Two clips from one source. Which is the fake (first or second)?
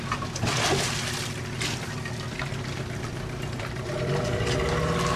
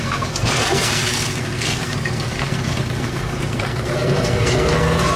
second